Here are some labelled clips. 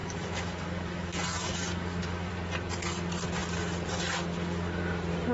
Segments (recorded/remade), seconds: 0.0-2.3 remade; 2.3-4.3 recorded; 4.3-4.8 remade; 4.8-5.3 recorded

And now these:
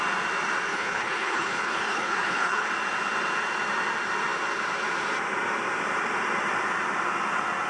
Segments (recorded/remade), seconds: 0.0-0.7 recorded; 0.7-2.7 remade; 2.7-7.7 recorded

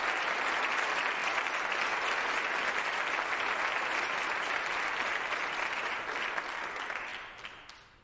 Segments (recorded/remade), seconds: 0.0-8.0 recorded

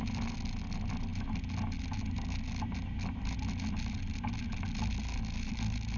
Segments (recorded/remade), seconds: 0.0-6.0 recorded

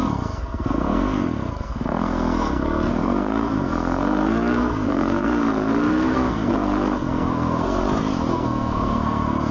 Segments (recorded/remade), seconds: 0.0-7.8 remade; 7.8-8.3 recorded; 8.3-9.5 remade

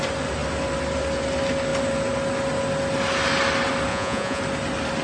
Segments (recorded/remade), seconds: 0.0-3.9 recorded; 3.9-4.4 remade; 4.4-5.0 recorded

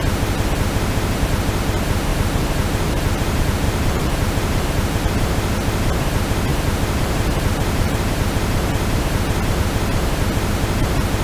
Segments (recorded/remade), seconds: 0.0-2.1 recorded; 2.1-5.1 remade; 5.1-6.5 recorded; 6.5-8.0 remade; 8.0-11.2 recorded

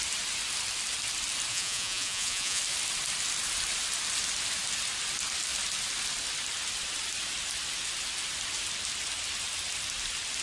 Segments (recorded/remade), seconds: 0.0-1.5 recorded; 1.5-2.6 remade; 2.6-10.4 recorded